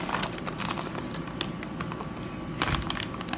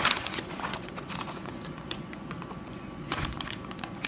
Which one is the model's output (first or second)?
second